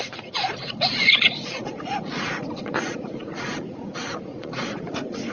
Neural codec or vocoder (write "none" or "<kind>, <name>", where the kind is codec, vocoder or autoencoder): vocoder, Vocos